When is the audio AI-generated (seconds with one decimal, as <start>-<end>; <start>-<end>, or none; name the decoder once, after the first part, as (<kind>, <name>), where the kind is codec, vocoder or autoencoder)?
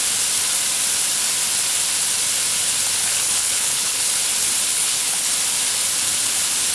3.0-4.1 (codec, HILCodec); 4.7-5.3